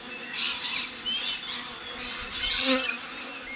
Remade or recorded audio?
recorded